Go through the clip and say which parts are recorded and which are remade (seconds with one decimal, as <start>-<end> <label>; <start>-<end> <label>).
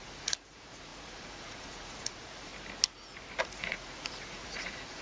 0.0-2.5 remade; 2.5-3.4 recorded; 3.4-5.0 remade